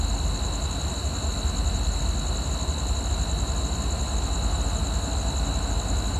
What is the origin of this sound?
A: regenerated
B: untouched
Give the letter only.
B